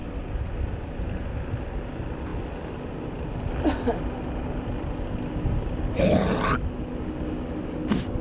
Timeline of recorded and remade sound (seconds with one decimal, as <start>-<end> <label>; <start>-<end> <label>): 0.0-8.2 recorded